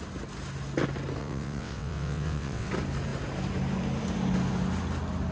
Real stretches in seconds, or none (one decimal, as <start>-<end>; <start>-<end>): 0.0-1.2; 2.7-5.3

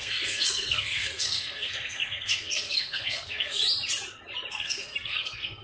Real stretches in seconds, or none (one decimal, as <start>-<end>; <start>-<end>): 3.6-4.5

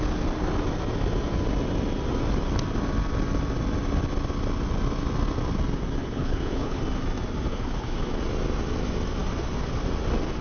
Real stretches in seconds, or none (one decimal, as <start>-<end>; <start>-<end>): 0.0-6.0; 6.8-7.5; 8.1-10.4

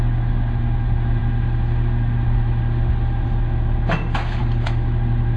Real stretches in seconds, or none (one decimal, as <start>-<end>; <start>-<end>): 0.0-5.4

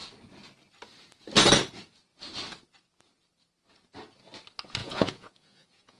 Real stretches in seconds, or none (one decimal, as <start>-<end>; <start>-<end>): 0.0-4.8

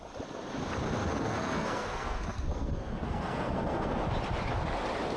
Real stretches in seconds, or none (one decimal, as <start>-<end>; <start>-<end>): 0.0-1.0; 4.1-5.2

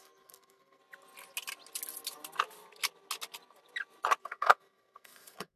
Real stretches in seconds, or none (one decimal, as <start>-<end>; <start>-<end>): 0.8-4.2

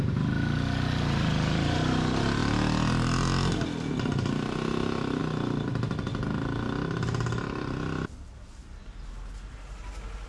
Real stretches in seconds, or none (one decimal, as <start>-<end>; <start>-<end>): 0.0-10.3